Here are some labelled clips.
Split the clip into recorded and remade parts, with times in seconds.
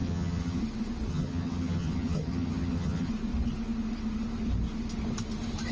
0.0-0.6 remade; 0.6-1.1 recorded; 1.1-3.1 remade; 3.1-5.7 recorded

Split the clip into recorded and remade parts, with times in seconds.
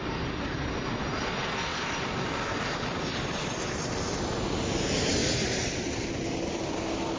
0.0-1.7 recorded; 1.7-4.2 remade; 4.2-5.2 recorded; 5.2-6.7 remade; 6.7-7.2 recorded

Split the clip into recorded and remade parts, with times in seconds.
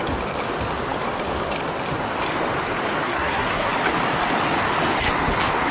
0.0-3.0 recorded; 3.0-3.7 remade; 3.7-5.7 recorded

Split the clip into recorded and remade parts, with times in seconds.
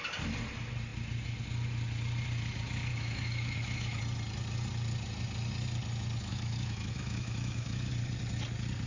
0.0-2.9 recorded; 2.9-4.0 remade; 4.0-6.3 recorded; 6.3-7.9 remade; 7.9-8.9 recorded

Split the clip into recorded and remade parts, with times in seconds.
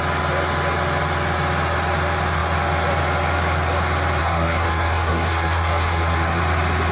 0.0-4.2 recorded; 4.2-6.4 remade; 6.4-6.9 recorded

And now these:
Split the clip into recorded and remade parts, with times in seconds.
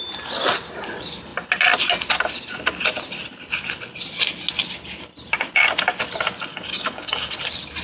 0.0-6.5 recorded; 6.5-7.3 remade; 7.3-7.8 recorded